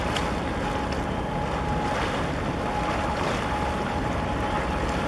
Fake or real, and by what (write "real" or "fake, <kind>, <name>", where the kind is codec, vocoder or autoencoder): real